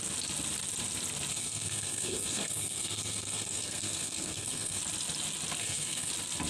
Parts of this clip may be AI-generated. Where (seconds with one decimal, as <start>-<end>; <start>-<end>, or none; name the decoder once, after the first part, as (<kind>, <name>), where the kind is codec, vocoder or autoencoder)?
1.3-4.8 (codec, SNAC); 5.6-6.1